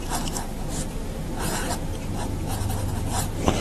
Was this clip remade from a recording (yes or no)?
no